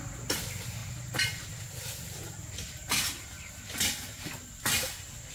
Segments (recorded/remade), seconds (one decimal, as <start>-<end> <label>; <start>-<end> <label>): 0.0-0.8 remade; 0.8-1.4 recorded; 1.4-2.2 remade; 2.2-5.3 recorded